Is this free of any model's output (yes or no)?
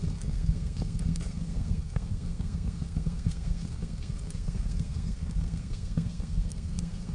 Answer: no